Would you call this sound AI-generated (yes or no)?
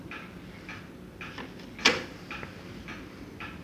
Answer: no